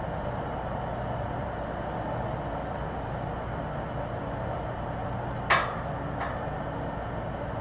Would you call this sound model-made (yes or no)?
no